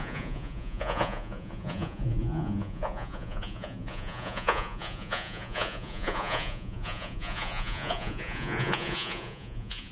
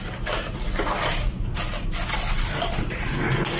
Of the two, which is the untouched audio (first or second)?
second